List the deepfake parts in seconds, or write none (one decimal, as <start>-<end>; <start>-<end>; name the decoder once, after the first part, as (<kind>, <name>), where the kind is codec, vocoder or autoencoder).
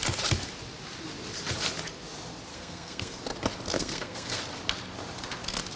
2.5-3.2 (codec, SNAC); 3.8-4.4